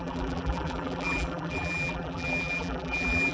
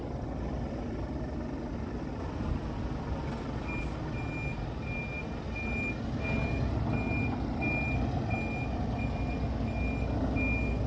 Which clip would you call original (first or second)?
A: second